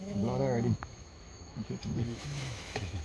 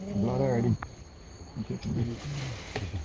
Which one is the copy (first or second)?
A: first